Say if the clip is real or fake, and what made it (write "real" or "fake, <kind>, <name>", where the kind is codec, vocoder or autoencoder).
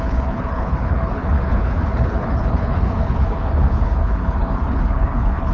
fake, codec, HILCodec